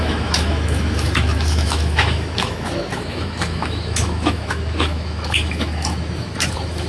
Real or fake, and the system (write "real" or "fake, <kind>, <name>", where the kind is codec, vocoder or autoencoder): fake, autoencoder, DAC-VAE